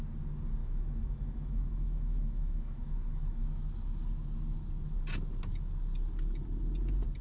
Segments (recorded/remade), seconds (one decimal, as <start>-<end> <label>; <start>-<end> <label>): 0.0-0.6 recorded; 0.6-3.6 remade; 3.6-7.2 recorded